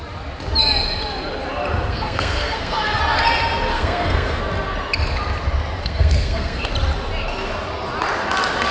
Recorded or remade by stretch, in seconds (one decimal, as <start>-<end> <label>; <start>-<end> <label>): 0.0-1.9 recorded; 1.9-3.0 remade; 3.0-3.7 recorded; 3.7-4.4 remade; 4.4-5.8 recorded; 5.8-6.7 remade; 6.7-8.7 recorded